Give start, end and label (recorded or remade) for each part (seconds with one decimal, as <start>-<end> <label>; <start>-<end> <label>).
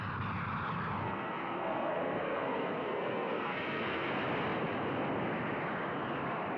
0.0-1.0 recorded; 1.0-4.1 remade; 4.1-6.6 recorded